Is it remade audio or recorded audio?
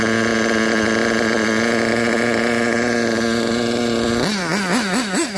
recorded